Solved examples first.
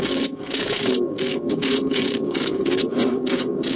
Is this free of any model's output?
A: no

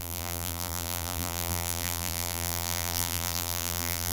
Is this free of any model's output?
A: no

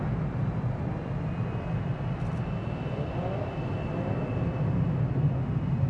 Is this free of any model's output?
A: yes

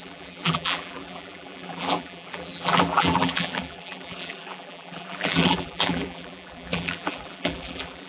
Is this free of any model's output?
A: no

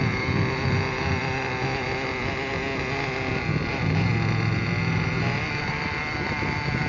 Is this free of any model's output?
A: yes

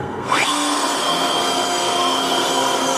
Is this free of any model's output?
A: no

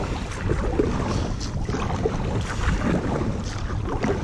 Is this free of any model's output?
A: yes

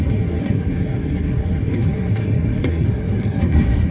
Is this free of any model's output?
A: no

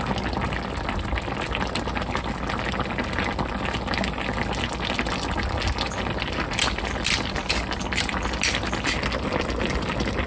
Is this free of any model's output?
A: yes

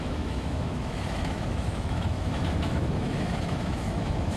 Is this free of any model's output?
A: no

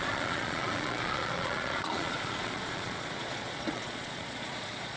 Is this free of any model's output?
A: no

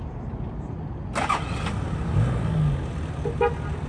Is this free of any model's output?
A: yes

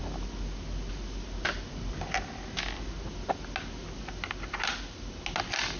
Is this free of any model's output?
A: yes